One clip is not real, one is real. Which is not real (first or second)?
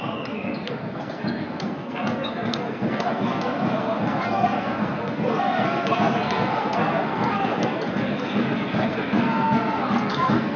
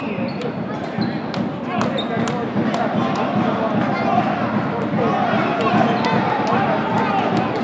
first